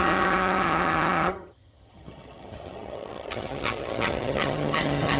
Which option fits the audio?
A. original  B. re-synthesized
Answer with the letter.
B